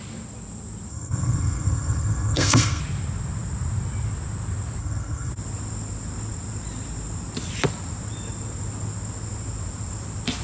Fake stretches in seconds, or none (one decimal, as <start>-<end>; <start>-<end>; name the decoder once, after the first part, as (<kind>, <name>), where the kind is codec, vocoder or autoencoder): 0.9-2.8 (codec, SNAC); 4.8-5.3